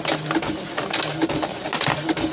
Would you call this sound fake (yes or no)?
no